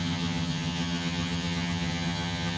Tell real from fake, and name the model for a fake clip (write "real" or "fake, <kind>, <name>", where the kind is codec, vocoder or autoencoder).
fake, vocoder, HiFi-GAN